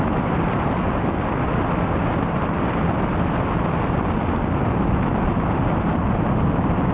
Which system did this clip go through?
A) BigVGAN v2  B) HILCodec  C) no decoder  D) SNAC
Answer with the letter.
C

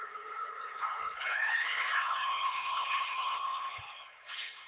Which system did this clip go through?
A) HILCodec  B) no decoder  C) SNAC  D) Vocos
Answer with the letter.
A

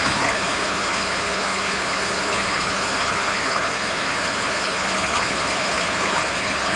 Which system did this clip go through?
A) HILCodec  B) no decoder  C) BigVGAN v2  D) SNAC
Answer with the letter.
A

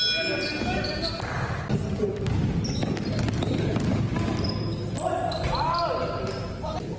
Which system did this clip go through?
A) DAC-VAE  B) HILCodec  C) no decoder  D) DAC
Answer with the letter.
C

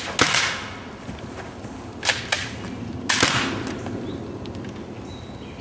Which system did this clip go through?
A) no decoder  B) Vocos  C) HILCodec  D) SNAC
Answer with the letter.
A